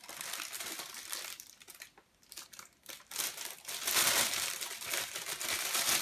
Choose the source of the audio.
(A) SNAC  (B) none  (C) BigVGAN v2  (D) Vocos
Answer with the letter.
B